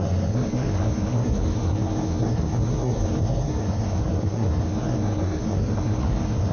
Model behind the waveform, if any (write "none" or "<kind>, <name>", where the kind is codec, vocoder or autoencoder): codec, SNAC